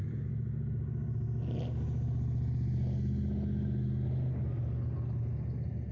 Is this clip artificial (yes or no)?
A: no